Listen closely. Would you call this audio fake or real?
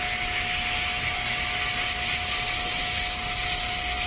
real